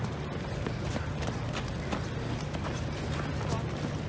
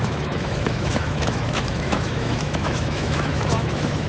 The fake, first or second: second